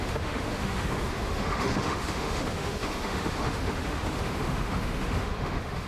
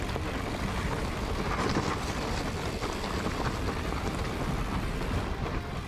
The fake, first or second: first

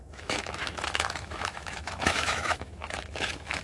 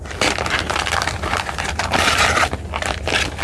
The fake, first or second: first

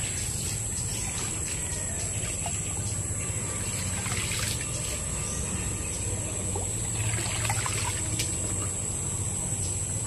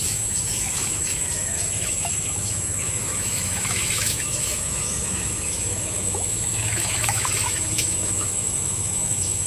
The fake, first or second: second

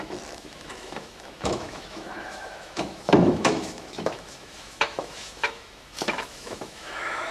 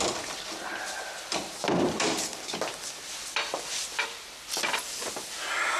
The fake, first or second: first